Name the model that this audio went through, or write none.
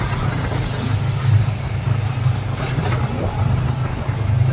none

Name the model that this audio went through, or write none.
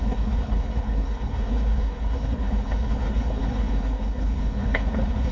codec, HILCodec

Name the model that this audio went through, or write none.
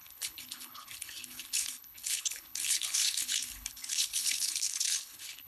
codec, HILCodec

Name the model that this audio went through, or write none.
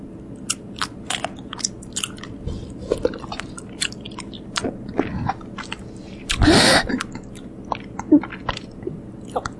none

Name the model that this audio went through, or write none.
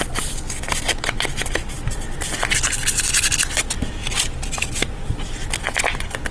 none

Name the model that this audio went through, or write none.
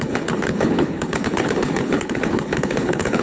codec, HILCodec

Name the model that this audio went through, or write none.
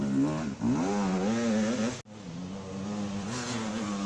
none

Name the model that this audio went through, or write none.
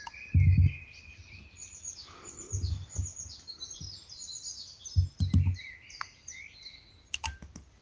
none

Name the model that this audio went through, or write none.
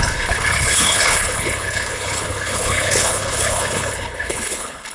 codec, HILCodec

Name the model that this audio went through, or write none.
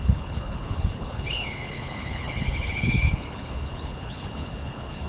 codec, HILCodec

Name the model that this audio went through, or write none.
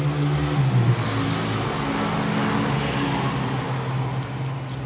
none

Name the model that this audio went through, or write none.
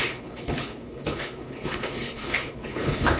codec, HILCodec